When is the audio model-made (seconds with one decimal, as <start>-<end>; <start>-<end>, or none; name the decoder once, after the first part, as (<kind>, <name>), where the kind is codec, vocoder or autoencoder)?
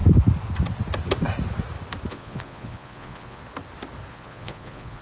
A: 2.1-3.4 (vocoder, Vocos); 4.1-5.0